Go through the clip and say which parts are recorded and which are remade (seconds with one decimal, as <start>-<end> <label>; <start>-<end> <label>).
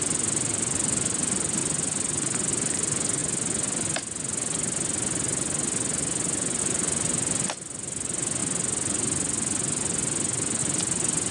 0.0-1.6 remade; 1.6-2.5 recorded; 2.5-3.2 remade; 3.2-6.6 recorded; 6.6-8.4 remade; 8.4-10.6 recorded; 10.6-11.3 remade